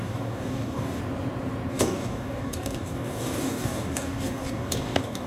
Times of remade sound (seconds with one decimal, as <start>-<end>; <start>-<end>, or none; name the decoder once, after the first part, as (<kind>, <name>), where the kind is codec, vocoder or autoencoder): 0.0-1.0 (codec, DAC); 1.7-5.3